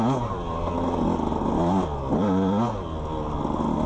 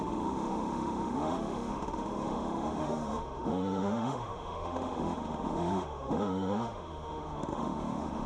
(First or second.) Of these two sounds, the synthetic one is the second